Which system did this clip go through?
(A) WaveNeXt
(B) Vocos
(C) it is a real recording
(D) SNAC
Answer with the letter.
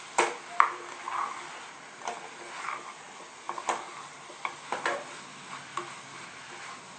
C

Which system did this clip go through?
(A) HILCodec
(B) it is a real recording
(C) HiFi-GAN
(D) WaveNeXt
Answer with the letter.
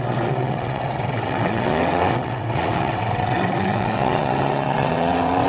D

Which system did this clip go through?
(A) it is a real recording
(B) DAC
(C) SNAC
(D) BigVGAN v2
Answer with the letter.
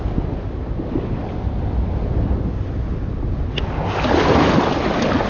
A